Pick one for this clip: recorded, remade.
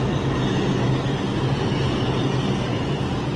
recorded